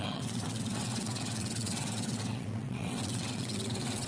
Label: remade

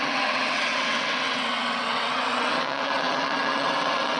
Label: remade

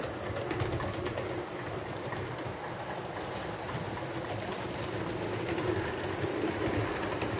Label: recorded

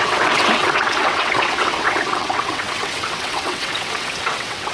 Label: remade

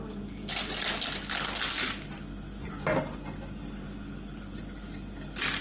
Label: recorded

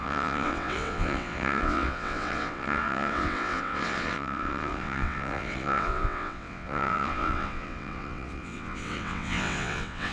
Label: remade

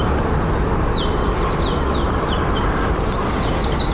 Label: recorded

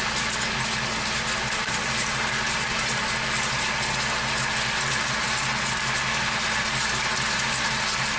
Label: recorded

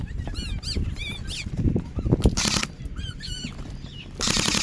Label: recorded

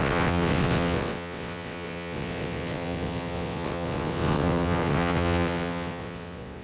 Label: remade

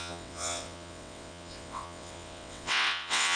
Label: remade